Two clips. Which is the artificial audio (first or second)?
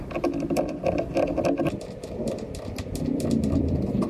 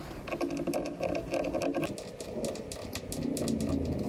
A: first